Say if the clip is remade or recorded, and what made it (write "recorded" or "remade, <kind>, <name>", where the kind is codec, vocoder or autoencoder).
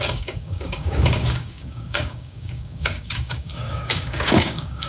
remade, codec, DAC